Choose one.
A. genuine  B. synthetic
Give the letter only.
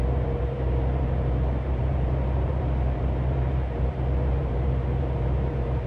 B